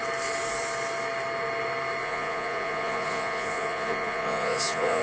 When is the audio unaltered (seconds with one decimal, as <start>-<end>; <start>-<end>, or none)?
0.0-2.0